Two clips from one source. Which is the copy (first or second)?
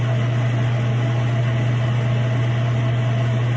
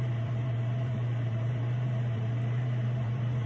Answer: second